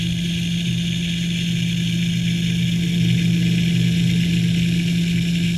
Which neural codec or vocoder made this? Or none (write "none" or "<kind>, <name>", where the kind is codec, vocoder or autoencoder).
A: none